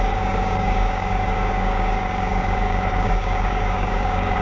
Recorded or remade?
remade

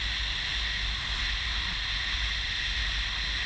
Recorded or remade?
recorded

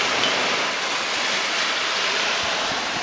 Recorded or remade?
recorded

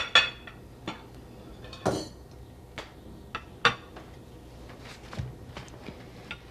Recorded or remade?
recorded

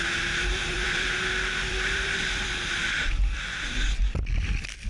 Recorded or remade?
remade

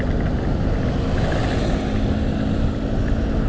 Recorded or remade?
recorded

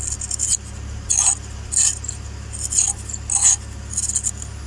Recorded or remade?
recorded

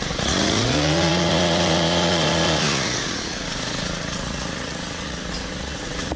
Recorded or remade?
remade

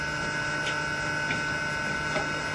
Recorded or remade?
recorded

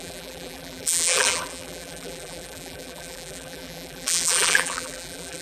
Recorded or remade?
remade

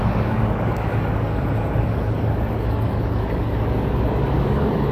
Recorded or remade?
remade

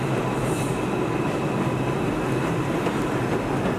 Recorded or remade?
recorded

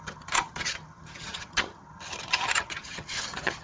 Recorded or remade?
remade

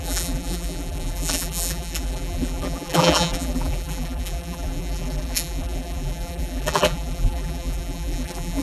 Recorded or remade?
remade